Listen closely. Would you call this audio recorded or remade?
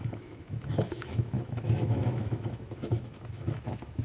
remade